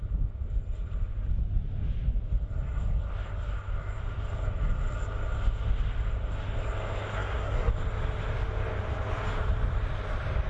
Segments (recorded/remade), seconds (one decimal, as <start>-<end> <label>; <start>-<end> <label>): 0.0-7.1 recorded; 7.1-7.7 remade; 7.7-10.5 recorded